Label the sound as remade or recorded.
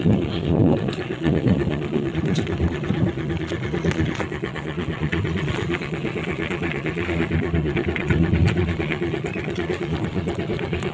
remade